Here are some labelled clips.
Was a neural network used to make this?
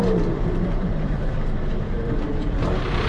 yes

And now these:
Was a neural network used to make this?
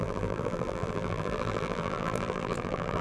yes